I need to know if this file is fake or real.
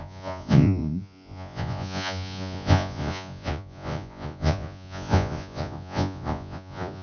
fake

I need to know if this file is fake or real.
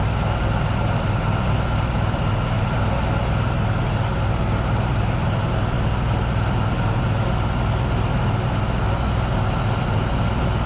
real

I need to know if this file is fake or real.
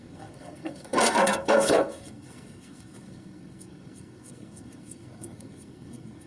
fake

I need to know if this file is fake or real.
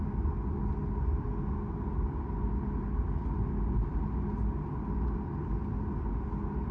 real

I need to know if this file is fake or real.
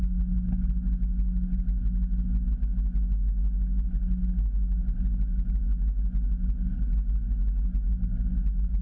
real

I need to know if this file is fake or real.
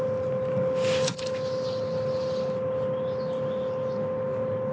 real